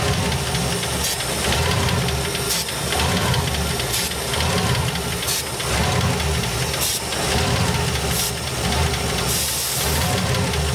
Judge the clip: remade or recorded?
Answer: recorded